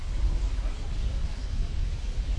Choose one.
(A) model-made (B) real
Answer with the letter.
A